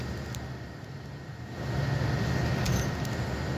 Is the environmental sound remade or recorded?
recorded